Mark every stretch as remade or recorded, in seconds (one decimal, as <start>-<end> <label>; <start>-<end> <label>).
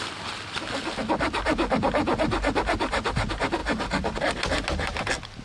0.0-5.4 recorded